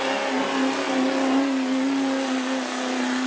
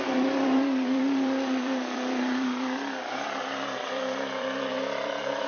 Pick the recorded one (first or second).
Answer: first